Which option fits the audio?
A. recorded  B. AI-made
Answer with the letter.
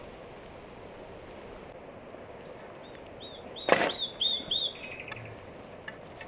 A